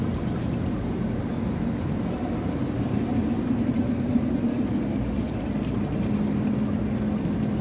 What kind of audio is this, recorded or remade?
recorded